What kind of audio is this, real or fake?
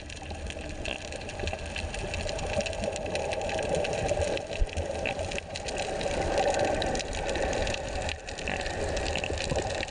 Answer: real